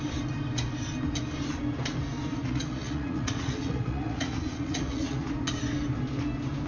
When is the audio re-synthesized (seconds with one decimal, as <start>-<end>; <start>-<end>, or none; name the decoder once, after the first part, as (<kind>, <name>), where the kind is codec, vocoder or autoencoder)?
2.3-5.3 (vocoder, Vocos)

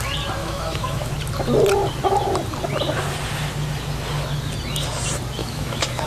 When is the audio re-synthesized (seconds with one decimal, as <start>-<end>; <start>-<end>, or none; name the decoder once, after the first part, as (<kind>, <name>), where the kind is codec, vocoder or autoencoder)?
0.4-1.1 (autoencoder, DAC-VAE); 5.4-6.1

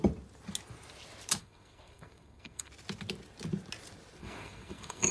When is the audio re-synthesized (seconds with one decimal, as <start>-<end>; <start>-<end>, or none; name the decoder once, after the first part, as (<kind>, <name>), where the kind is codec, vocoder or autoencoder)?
1.4-2.7 (codec, SNAC); 4.2-5.1

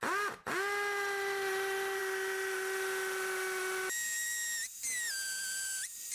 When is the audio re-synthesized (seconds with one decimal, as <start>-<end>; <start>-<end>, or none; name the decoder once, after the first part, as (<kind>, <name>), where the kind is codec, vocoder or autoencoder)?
none

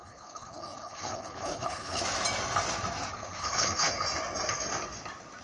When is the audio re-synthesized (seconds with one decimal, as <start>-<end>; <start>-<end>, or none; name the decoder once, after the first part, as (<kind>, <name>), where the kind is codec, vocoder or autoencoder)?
0.0-2.0 (codec, HILCodec); 3.2-3.9

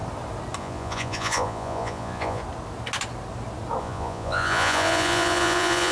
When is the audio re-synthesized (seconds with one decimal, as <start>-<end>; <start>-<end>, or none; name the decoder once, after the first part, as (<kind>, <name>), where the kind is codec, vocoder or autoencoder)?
0.6-2.4 (vocoder, Vocos); 3.8-5.9

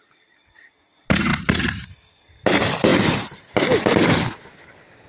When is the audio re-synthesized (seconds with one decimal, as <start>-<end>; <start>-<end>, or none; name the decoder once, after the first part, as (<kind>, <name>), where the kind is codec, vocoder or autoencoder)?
none